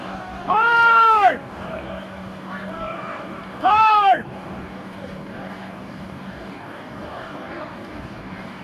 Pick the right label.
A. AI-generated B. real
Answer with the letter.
A